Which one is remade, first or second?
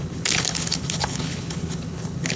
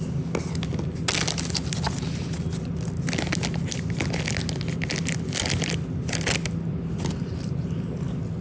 first